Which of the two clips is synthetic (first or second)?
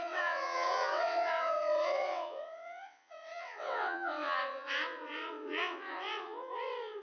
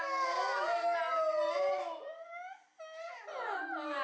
first